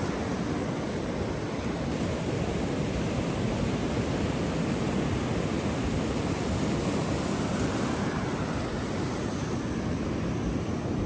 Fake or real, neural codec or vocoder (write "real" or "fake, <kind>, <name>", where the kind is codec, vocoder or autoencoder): real